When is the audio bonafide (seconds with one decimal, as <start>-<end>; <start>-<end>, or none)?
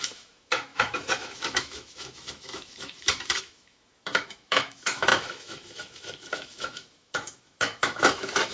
none